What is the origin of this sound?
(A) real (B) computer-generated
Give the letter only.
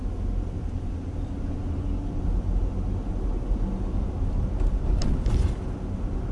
A